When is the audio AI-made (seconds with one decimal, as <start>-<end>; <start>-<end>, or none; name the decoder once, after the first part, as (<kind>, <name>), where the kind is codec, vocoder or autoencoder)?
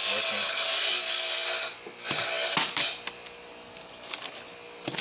none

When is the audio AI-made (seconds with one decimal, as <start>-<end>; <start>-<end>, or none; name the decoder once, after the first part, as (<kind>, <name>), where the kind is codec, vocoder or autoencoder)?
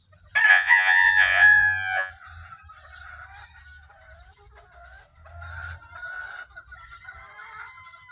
0.5-2.1 (vocoder, Vocos)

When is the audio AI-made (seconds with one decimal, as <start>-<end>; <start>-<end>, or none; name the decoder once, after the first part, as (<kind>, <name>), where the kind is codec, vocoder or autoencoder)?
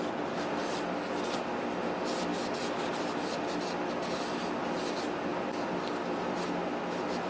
none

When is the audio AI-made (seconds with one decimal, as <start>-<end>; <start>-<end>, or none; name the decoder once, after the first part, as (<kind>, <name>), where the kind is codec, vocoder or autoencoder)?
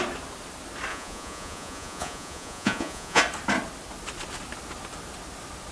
0.9-3.2 (vocoder, Vocos)